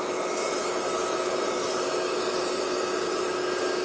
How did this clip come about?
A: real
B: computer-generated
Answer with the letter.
B